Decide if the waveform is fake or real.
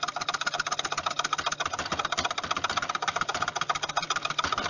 real